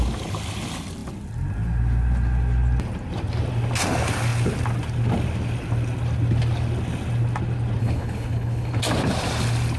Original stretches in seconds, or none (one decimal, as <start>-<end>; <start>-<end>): 0.0-7.8; 8.8-9.8